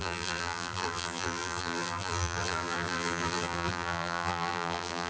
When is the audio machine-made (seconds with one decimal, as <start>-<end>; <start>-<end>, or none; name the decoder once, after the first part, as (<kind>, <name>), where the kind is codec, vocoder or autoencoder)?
0.0-5.1 (vocoder, BigVGAN v2)